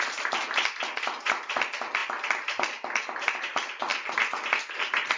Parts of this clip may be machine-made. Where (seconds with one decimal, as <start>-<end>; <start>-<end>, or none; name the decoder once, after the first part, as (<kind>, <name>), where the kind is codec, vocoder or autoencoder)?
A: none